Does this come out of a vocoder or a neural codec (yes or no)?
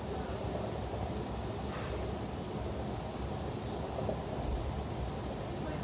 no